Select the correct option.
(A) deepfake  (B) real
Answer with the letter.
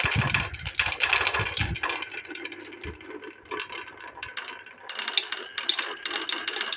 B